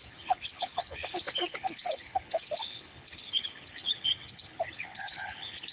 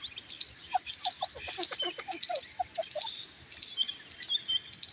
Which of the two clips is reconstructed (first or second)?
first